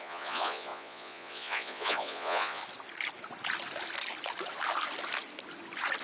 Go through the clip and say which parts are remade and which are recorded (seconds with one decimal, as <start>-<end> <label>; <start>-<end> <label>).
0.0-2.6 remade; 2.6-6.0 recorded